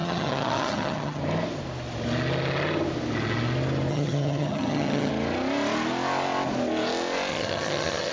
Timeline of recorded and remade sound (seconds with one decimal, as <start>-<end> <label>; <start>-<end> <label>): 0.0-1.2 remade; 1.2-3.9 recorded; 3.9-5.1 remade; 5.1-7.3 recorded; 7.3-8.1 remade